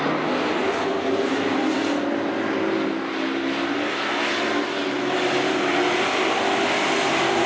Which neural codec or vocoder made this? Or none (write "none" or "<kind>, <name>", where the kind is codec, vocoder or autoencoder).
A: none